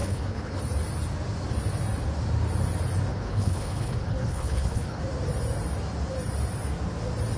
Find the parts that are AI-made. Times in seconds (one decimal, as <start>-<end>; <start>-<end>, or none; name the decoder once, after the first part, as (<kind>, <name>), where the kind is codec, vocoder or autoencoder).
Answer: 0.0-0.6 (codec, HILCodec); 3.1-5.0